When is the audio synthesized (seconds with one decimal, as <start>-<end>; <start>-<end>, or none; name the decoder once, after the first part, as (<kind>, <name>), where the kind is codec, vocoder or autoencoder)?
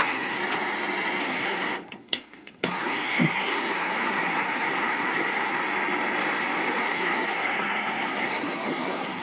0.0-0.4 (codec, SNAC); 1.2-5.6; 6.8-9.2